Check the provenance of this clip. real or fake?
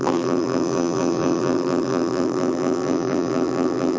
fake